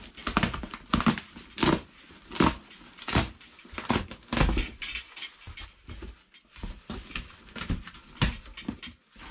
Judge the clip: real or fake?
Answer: real